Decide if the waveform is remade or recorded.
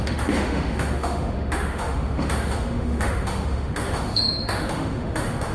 remade